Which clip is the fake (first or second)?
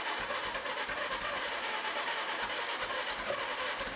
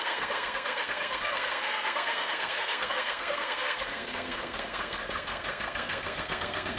second